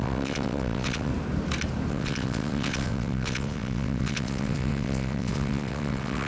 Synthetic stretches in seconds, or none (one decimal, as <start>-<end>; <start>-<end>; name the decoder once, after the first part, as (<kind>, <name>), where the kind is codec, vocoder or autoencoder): 0.0-1.1 (vocoder, WaveNeXt); 1.9-6.3